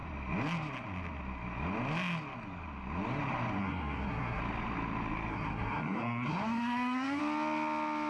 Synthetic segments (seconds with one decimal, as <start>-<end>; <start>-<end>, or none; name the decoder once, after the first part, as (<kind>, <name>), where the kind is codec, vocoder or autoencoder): 3.6-4.4 (codec, SNAC); 5.3-7.2